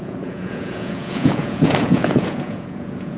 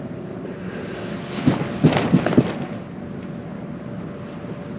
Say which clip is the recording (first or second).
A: second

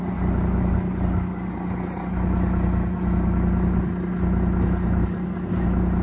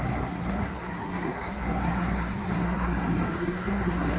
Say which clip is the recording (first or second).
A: first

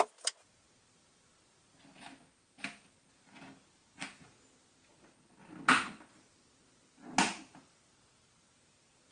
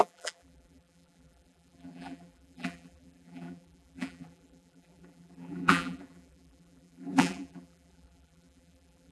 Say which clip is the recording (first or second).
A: first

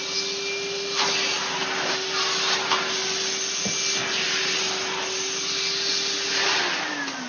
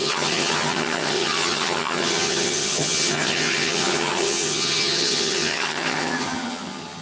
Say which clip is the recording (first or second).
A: first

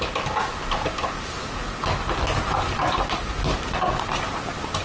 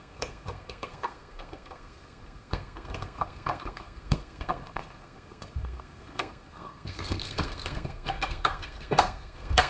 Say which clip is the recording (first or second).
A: first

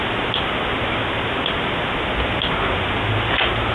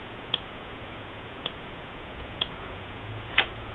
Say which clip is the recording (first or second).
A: first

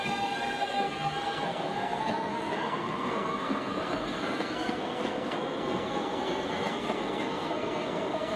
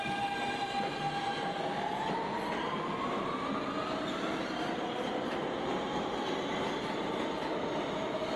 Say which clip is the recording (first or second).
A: second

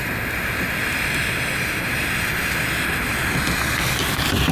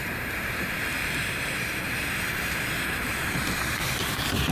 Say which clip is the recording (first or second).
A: first